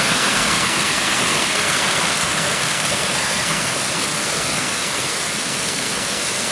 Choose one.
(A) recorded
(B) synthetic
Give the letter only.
B